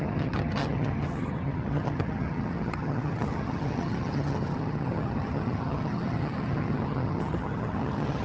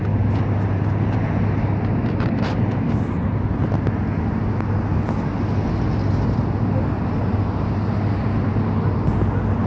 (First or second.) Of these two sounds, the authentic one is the second